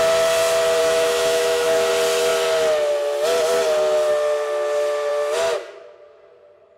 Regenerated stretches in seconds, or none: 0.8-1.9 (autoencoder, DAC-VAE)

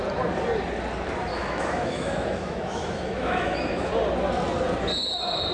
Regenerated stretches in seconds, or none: 1.3-3.9 (autoencoder, DAC-VAE)

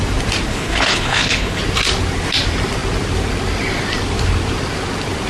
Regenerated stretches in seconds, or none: 0.5-1.6 (codec, HILCodec)

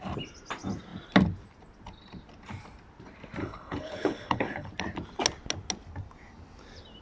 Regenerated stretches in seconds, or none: 3.4-4.7 (codec, HILCodec)

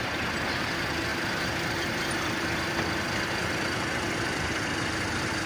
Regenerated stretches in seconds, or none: 0.0-1.1 (vocoder, BigVGAN v2); 2.1-5.5

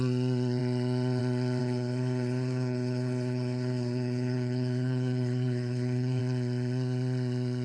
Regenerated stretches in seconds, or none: 1.6-6.2 (codec, HILCodec)

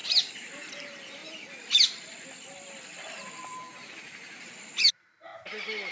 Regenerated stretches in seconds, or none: 0.0-0.7 (vocoder, BigVGAN v2); 1.2-4.7

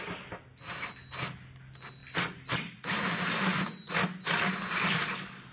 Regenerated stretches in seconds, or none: none